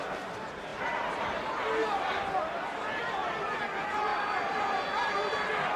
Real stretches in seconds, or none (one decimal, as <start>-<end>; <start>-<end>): 0.0-5.8